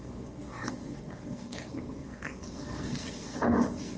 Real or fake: fake